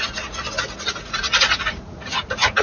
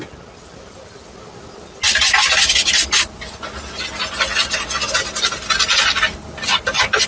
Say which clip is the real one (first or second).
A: second